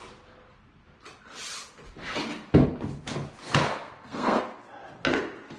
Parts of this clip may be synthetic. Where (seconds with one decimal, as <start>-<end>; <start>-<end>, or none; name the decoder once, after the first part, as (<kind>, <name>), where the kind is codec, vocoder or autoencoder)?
3.4-4.4 (codec, SNAC)